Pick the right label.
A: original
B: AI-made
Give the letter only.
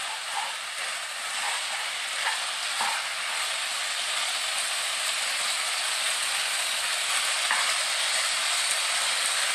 A